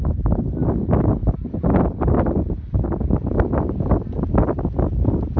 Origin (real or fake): real